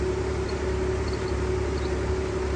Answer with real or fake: real